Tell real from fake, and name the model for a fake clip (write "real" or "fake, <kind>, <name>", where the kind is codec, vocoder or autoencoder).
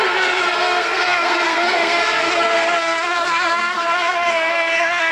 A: fake, codec, SNAC